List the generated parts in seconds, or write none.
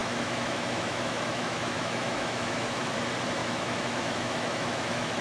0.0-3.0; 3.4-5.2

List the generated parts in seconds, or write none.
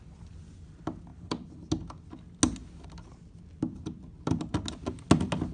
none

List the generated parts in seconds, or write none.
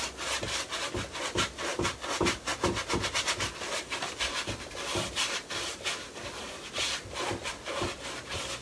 none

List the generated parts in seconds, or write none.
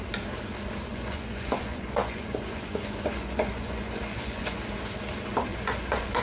0.9-4.6; 5.5-6.2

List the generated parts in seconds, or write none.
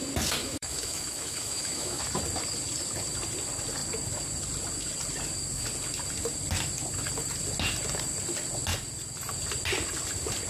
0.4-2.0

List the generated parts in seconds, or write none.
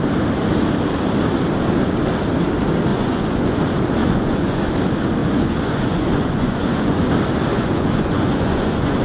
2.9-3.6; 4.0-4.6; 5.2-7.1; 7.5-9.0